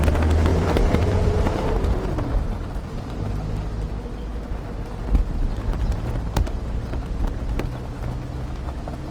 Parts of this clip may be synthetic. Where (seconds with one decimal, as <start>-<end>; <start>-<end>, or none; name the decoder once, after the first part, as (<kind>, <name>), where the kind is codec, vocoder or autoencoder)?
0.5-3.5 (vocoder, BigVGAN v2)